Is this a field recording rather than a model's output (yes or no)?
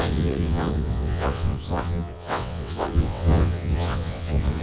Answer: no